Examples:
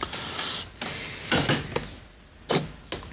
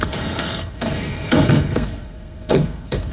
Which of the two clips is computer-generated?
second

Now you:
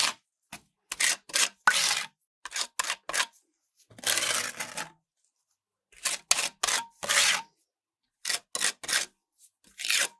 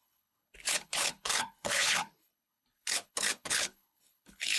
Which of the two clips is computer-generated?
second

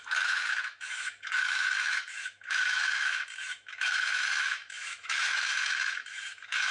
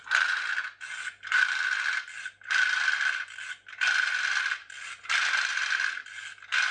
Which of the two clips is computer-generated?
first